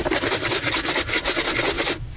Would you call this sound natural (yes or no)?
yes